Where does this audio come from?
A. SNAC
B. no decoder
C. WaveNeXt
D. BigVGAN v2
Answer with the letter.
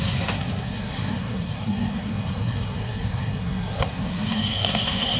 A